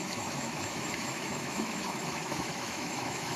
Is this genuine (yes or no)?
no